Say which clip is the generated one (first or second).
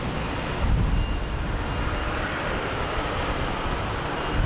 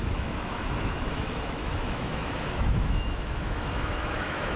second